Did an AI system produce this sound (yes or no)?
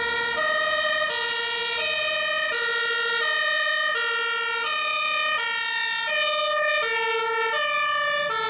no